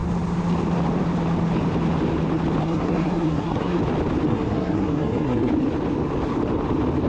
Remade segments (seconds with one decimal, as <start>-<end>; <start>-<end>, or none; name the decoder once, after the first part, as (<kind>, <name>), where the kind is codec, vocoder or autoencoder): 2.6-3.8 (codec, SNAC); 4.3-5.5